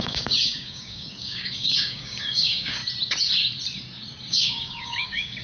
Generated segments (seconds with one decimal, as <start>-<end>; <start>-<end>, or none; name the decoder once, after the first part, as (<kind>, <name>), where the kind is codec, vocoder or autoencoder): 0.0-2.8 (codec, DAC); 4.3-5.4